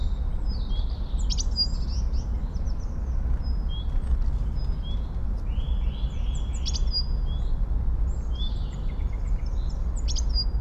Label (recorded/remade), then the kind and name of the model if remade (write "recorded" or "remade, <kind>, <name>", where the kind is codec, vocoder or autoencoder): recorded